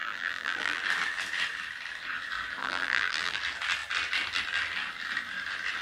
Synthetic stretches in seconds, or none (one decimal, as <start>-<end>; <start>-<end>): 0.0-0.8; 2.6-3.4